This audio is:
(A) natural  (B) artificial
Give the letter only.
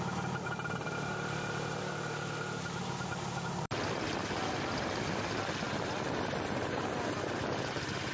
A